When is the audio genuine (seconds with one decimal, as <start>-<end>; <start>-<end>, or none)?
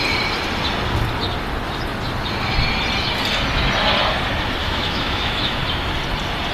0.0-4.6; 5.6-6.5